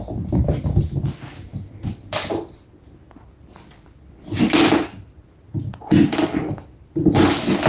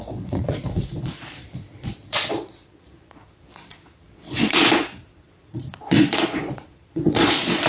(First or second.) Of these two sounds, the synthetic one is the second